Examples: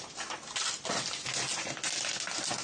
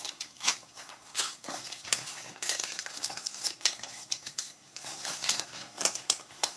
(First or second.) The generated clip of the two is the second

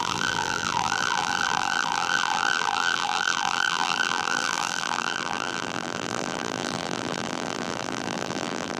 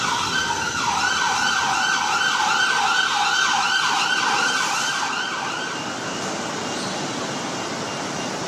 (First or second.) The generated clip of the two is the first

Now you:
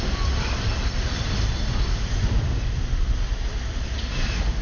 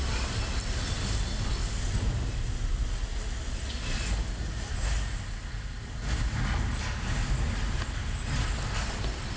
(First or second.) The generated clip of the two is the first